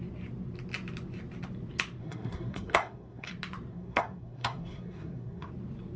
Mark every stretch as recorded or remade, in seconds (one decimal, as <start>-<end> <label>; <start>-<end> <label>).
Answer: 0.0-2.0 recorded; 2.0-3.3 remade; 3.3-3.7 recorded; 3.7-5.5 remade; 5.5-6.0 recorded